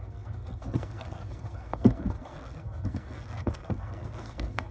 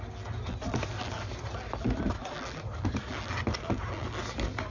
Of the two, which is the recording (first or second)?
second